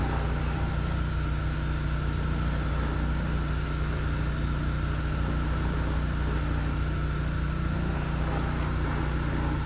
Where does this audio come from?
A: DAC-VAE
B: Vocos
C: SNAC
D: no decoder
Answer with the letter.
D